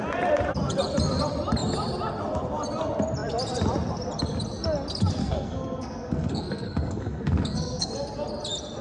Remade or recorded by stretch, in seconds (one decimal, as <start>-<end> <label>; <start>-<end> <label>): 0.0-5.2 recorded; 5.2-7.9 remade; 7.9-8.8 recorded